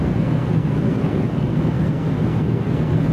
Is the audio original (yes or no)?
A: no